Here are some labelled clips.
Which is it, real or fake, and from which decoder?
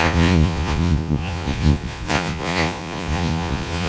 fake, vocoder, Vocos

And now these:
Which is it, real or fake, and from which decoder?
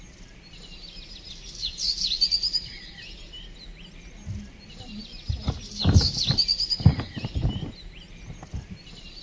real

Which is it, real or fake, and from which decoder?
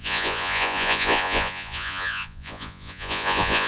fake, vocoder, Vocos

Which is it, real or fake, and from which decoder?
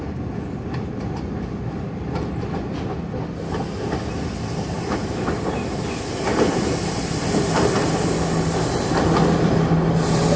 real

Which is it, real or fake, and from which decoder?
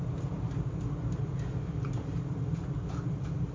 real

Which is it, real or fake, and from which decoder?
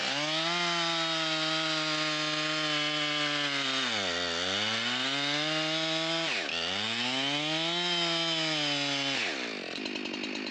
real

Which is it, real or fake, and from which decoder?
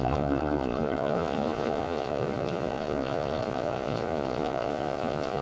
fake, vocoder, Vocos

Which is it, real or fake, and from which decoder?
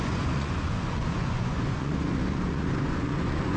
fake, vocoder, Vocos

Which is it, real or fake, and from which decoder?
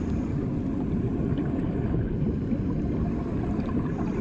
real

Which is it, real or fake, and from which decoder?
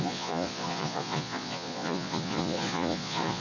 fake, vocoder, Vocos